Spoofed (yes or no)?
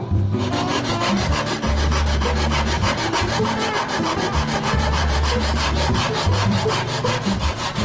yes